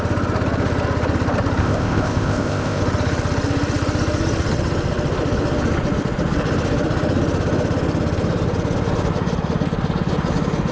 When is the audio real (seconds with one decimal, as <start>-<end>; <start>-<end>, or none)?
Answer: 0.0-1.6; 2.8-10.7